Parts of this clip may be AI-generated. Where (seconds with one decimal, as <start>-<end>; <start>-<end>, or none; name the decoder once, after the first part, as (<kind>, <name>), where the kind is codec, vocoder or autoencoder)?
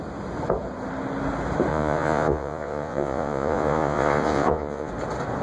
1.7-4.9 (vocoder, Vocos)